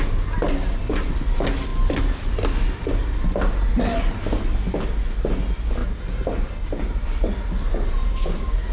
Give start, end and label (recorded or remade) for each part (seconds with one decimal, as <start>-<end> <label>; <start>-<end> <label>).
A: 0.0-8.7 recorded